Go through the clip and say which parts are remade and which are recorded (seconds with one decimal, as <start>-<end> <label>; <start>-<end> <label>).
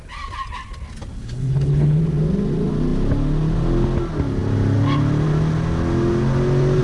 0.0-1.1 recorded; 1.1-2.0 remade; 2.0-6.8 recorded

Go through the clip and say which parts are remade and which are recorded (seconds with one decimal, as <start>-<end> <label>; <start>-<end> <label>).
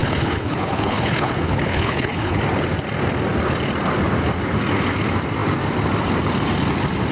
0.0-2.4 remade; 2.4-7.1 recorded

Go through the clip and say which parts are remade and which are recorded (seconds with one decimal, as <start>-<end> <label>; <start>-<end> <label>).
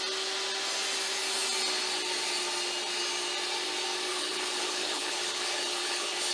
0.0-4.1 recorded; 4.1-6.3 remade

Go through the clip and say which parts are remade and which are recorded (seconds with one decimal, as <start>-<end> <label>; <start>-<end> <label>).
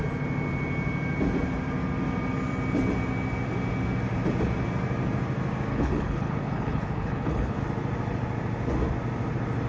0.0-5.7 recorded; 5.7-7.6 remade; 7.6-9.7 recorded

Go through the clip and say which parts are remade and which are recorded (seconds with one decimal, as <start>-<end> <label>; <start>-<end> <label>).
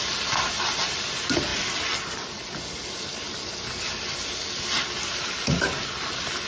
0.0-6.5 recorded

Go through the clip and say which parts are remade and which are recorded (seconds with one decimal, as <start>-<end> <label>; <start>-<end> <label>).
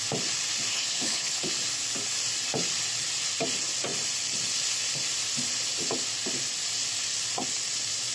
0.0-0.7 recorded; 0.7-1.4 remade; 1.4-8.1 recorded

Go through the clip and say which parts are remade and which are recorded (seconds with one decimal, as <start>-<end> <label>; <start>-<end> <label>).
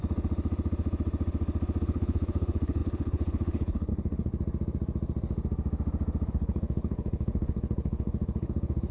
0.0-1.8 recorded; 1.8-4.3 remade; 4.3-6.3 recorded; 6.3-8.9 remade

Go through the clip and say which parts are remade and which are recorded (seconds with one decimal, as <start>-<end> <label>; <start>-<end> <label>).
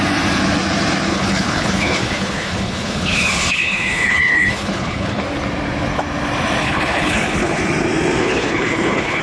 0.0-1.1 recorded; 1.1-5.2 remade; 5.2-6.6 recorded; 6.6-7.6 remade; 7.6-8.2 recorded; 8.2-9.2 remade